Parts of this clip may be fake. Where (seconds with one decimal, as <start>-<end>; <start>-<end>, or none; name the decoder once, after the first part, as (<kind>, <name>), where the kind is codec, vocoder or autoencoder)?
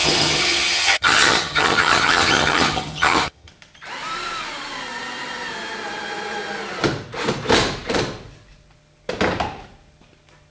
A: 0.0-3.5 (vocoder, HiFi-GAN)